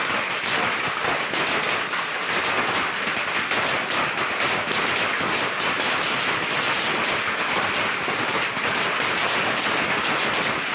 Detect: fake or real real